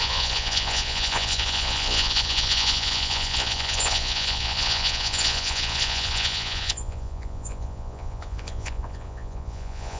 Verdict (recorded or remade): remade